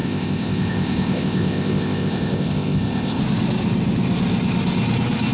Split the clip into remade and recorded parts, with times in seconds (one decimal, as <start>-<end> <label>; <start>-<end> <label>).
0.0-3.2 remade; 3.2-5.3 recorded